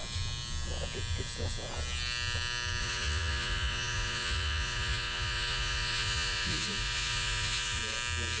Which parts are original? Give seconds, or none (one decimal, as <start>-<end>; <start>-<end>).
0.0-2.8; 7.8-8.4